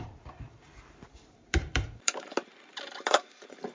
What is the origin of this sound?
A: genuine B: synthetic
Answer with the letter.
B